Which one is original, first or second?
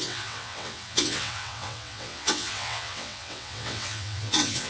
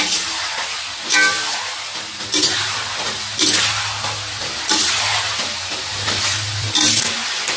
second